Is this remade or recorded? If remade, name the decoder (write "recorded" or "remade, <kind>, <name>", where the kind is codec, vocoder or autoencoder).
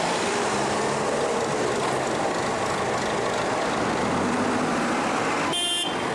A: recorded